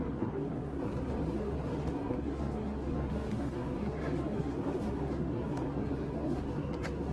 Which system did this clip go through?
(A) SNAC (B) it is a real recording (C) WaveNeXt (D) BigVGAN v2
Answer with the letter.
A